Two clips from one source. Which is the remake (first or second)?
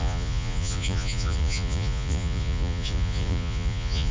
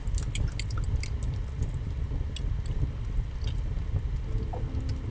first